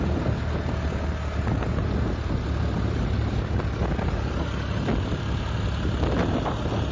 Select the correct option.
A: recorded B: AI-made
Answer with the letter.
A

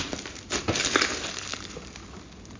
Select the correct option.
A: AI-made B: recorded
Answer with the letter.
B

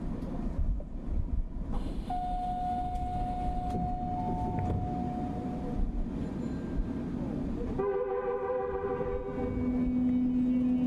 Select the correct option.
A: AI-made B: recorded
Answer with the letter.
B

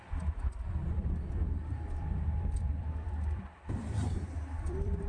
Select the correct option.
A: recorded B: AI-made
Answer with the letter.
B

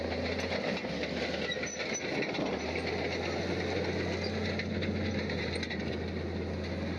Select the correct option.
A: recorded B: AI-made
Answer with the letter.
A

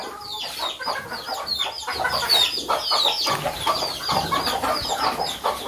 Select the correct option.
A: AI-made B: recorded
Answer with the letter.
B